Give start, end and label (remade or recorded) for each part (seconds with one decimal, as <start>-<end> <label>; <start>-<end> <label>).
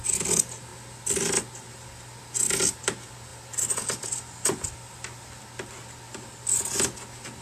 0.0-3.3 recorded; 3.3-5.4 remade; 5.4-7.4 recorded